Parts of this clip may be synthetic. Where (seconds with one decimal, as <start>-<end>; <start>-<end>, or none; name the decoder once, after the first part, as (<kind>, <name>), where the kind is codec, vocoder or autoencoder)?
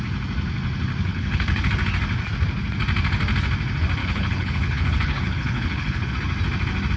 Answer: 1.1-1.7 (codec, HILCodec); 4.0-6.1